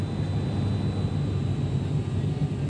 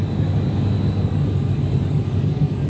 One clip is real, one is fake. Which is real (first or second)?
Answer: first